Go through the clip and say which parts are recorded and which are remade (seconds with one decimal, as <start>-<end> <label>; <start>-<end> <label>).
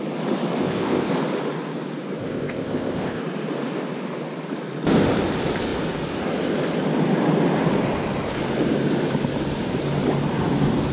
0.0-0.6 recorded; 0.6-1.1 remade; 1.1-2.2 recorded; 2.2-3.2 remade; 3.2-10.9 recorded